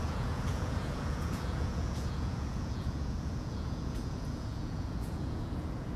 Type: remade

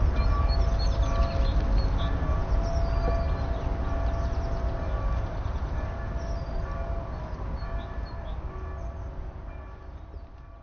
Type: recorded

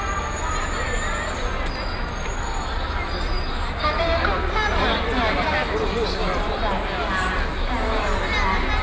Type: recorded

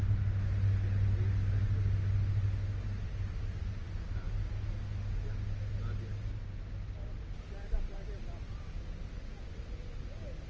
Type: recorded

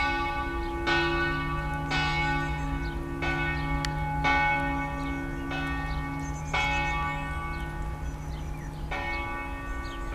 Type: recorded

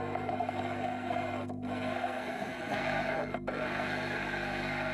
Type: remade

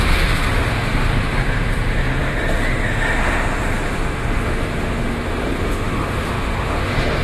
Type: remade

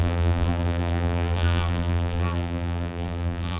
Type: remade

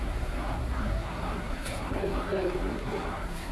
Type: remade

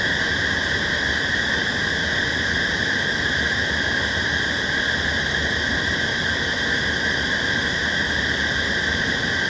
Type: recorded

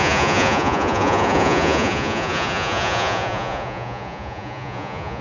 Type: remade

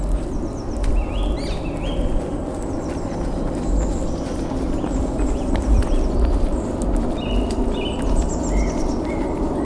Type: recorded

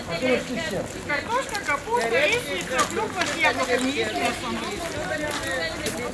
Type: recorded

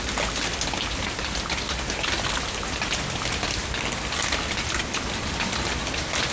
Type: recorded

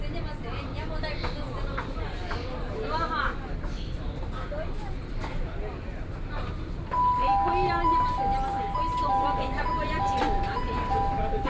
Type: recorded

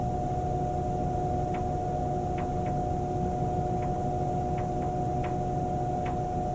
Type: recorded